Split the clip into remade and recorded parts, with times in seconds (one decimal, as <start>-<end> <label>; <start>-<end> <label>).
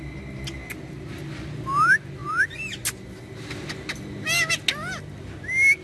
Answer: 0.0-5.8 recorded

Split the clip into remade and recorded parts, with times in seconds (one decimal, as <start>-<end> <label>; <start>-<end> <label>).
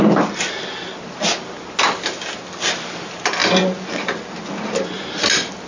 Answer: 0.0-5.7 recorded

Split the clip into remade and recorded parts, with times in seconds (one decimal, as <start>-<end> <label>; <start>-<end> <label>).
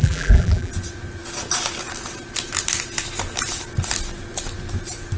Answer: 0.0-0.7 remade; 0.7-5.2 recorded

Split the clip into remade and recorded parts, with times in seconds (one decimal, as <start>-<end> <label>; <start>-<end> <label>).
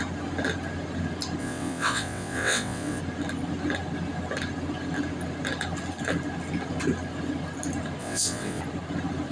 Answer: 0.0-1.4 recorded; 1.4-3.0 remade; 3.0-8.0 recorded; 8.0-8.6 remade; 8.6-9.3 recorded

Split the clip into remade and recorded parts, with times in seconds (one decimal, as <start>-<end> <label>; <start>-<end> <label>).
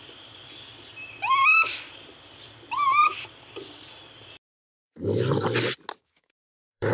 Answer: 0.0-6.0 recorded; 6.0-6.9 remade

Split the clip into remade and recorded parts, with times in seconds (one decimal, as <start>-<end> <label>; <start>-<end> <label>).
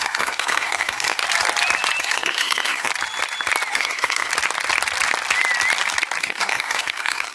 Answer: 0.0-1.2 remade; 1.2-2.0 recorded; 2.0-2.9 remade; 2.9-3.7 recorded; 3.7-4.3 remade; 4.3-6.2 recorded; 6.2-7.3 remade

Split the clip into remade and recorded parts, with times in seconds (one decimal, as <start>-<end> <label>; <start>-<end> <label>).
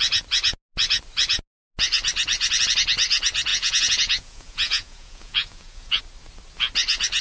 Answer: 0.0-3.5 recorded; 3.5-6.0 remade; 6.0-7.2 recorded